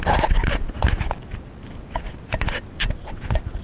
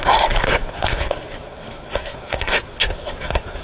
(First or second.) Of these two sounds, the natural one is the first